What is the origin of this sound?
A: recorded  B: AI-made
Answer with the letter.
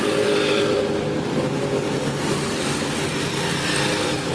A